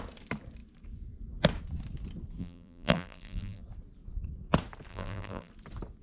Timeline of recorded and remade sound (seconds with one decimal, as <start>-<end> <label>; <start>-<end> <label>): 0.0-2.4 recorded; 2.4-3.6 remade; 3.6-4.9 recorded; 4.9-5.5 remade; 5.5-6.0 recorded